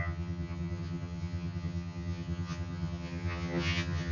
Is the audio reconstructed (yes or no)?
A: yes